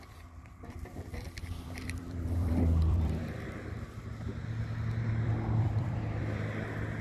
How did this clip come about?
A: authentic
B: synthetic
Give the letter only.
B